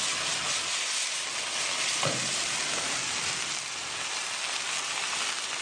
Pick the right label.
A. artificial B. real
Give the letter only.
B